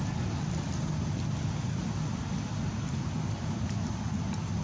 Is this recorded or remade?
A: recorded